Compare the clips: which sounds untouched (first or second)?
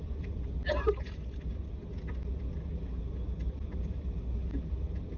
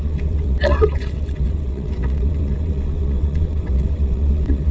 first